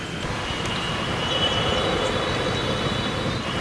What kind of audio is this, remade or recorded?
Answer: recorded